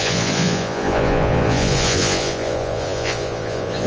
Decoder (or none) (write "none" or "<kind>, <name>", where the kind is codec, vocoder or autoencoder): vocoder, Vocos